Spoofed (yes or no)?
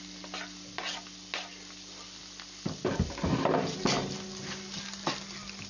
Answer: no